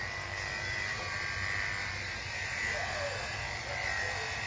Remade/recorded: recorded